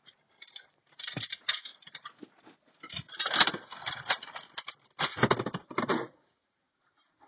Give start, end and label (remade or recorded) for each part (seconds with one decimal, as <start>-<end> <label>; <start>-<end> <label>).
0.0-1.7 remade; 1.7-5.3 recorded; 5.3-5.9 remade; 5.9-6.4 recorded; 6.4-7.3 remade